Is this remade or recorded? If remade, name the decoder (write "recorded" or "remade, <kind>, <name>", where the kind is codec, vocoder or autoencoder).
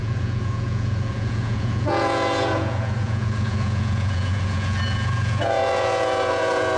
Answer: remade, vocoder, Vocos